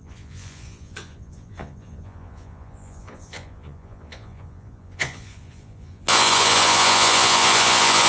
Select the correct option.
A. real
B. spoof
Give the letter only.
B